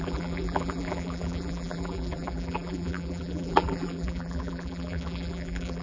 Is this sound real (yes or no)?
no